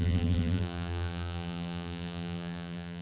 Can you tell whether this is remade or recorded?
remade